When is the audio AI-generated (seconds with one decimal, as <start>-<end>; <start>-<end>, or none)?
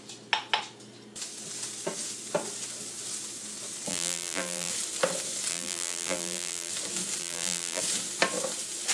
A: 3.9-4.7; 5.5-6.7; 7.2-7.8